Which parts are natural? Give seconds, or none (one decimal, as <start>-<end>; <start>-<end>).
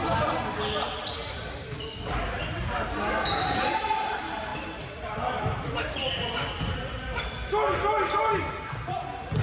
0.0-9.4